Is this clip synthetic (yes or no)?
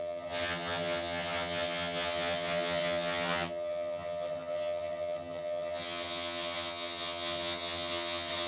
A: yes